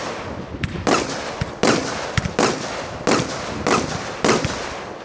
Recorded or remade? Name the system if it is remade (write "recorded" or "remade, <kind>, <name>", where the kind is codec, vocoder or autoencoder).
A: recorded